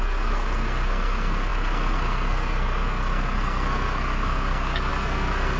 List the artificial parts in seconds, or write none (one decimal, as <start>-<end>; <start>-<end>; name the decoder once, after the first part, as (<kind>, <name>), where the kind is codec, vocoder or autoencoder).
0.0-5.6 (codec, SNAC)